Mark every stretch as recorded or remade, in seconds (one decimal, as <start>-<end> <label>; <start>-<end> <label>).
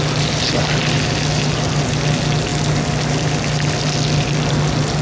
0.0-5.0 recorded